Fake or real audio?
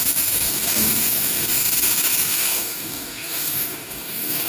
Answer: fake